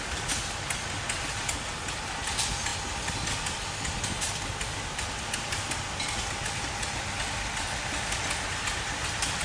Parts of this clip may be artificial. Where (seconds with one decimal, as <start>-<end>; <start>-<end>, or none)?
none